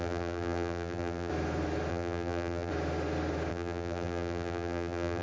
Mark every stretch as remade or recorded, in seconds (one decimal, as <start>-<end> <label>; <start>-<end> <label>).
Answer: 0.0-1.3 remade; 1.3-1.9 recorded; 1.9-2.7 remade; 2.7-3.5 recorded; 3.5-5.2 remade

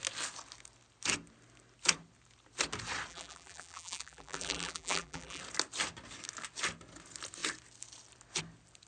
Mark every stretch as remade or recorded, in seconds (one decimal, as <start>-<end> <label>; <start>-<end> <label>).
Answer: 0.0-3.1 recorded; 3.1-5.4 remade; 5.4-8.9 recorded

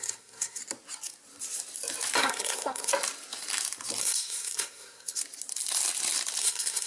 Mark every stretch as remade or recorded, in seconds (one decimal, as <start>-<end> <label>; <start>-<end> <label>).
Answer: 0.0-0.6 remade; 0.6-2.2 recorded; 2.2-2.9 remade; 2.9-4.0 recorded; 4.0-5.2 remade; 5.2-6.4 recorded; 6.4-6.9 remade

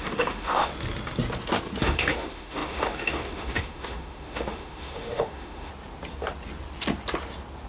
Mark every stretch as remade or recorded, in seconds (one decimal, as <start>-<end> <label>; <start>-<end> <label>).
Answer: 0.0-0.7 remade; 0.7-1.8 recorded; 1.8-5.7 remade; 5.7-7.7 recorded

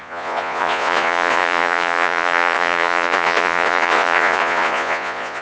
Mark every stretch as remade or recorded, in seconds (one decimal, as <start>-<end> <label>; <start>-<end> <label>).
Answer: 0.0-5.4 remade

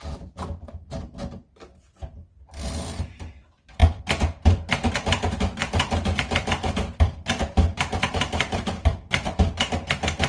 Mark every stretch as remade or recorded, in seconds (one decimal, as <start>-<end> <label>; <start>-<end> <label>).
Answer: 0.0-5.6 recorded; 5.6-8.7 remade; 8.7-10.3 recorded

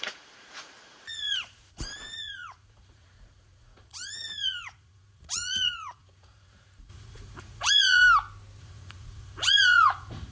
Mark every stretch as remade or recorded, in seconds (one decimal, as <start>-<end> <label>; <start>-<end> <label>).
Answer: 0.0-8.0 remade; 8.0-8.6 recorded; 8.6-10.3 remade

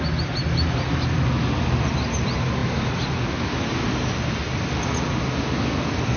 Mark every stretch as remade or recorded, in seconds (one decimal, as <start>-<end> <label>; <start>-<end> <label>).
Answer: 0.0-6.2 recorded